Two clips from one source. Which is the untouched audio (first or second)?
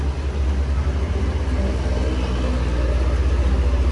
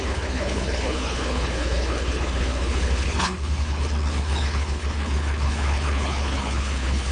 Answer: first